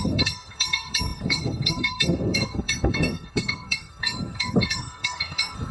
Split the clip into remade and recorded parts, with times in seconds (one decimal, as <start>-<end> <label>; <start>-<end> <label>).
0.0-5.7 remade